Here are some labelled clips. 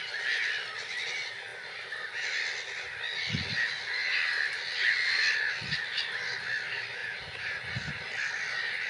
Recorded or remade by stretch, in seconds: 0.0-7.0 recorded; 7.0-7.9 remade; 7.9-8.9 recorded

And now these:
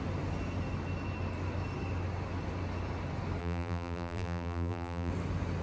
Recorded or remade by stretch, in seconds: 0.0-3.4 recorded; 3.4-5.1 remade; 5.1-5.6 recorded

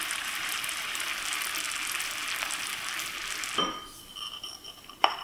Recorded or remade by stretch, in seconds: 0.0-1.1 remade; 1.1-4.2 recorded; 4.2-5.2 remade

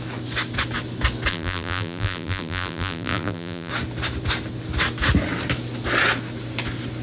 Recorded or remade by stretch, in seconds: 0.0-1.3 recorded; 1.3-3.7 remade; 3.7-7.0 recorded

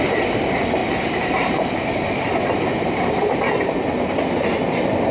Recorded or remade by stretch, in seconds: 0.0-0.8 recorded; 0.8-3.4 remade; 3.4-5.1 recorded

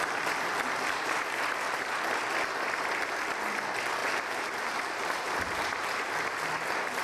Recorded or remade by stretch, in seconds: 0.0-4.0 recorded; 4.0-6.1 remade; 6.1-7.0 recorded

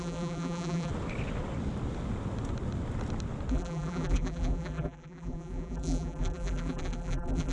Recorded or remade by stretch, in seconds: 0.0-0.9 remade; 0.9-3.5 recorded; 3.5-7.5 remade